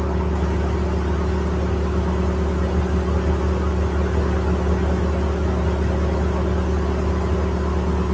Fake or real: real